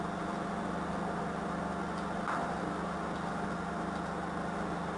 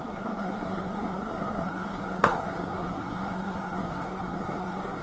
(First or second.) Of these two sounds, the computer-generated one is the second